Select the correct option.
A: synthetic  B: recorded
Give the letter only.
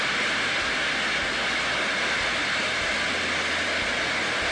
B